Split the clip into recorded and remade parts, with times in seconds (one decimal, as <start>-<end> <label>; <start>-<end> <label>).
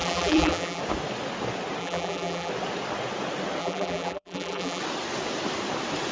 0.0-0.8 remade; 0.8-1.8 recorded; 1.8-2.5 remade; 2.5-3.6 recorded; 3.6-4.8 remade; 4.8-6.1 recorded